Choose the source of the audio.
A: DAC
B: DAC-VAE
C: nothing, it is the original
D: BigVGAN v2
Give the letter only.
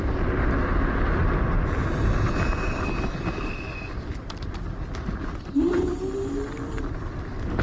C